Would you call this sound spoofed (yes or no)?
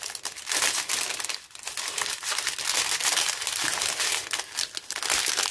no